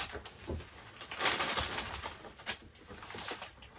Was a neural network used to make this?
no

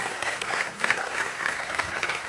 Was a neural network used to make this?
yes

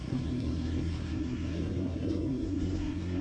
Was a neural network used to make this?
yes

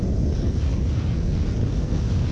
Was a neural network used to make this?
yes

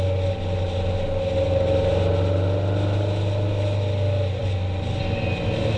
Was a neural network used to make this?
no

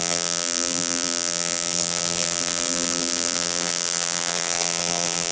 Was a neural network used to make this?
yes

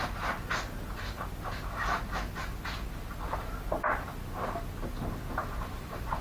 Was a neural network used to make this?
no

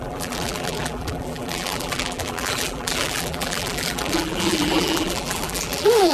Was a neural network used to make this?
yes